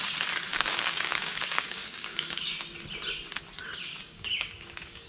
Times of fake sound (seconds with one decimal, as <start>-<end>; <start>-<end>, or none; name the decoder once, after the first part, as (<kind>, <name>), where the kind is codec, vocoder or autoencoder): 0.5-2.8 (codec, DAC); 3.9-5.1